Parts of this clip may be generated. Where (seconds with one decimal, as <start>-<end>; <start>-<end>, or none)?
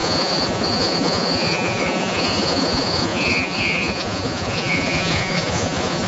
0.0-6.1